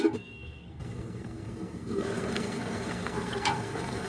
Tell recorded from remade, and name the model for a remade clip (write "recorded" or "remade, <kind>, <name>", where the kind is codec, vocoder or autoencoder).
remade, codec, SNAC